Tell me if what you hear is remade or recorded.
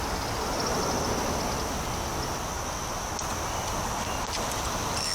recorded